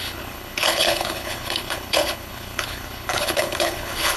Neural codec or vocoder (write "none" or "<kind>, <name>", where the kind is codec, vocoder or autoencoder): codec, HILCodec